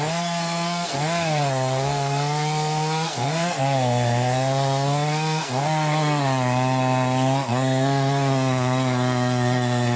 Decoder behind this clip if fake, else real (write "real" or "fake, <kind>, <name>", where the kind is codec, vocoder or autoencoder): fake, codec, SNAC